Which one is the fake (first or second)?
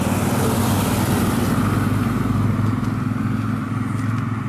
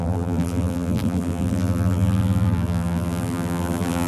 second